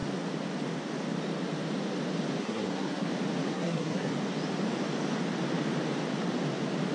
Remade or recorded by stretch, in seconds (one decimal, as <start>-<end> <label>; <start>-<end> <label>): 0.0-2.4 recorded; 2.4-3.1 remade; 3.1-3.5 recorded; 3.5-4.1 remade; 4.1-6.9 recorded